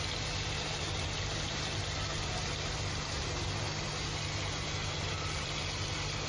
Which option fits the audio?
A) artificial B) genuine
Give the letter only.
B